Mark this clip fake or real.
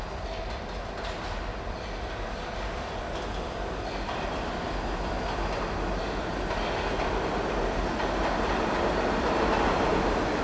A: real